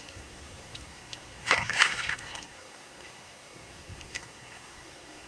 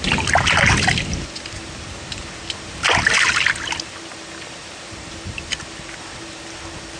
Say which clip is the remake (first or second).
first